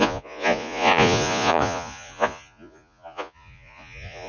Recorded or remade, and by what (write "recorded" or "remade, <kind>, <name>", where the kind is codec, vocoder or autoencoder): remade, vocoder, Vocos